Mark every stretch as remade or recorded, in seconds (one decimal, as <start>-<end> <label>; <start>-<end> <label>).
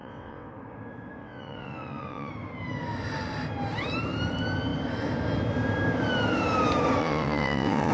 0.0-0.5 remade; 0.5-1.2 recorded; 1.2-2.3 remade; 2.3-7.0 recorded; 7.0-7.9 remade